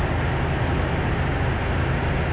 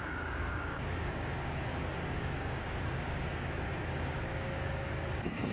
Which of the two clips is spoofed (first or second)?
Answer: second